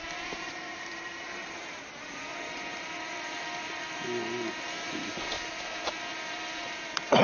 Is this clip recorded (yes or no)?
no